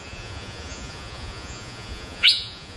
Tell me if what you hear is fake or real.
fake